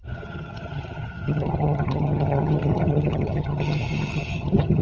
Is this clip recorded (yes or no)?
no